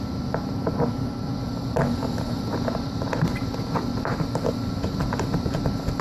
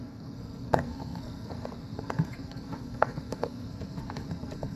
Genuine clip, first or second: first